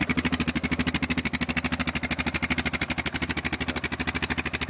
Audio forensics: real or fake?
real